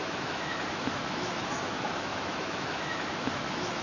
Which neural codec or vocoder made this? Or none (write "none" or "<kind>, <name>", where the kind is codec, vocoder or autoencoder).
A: autoencoder, DAC-VAE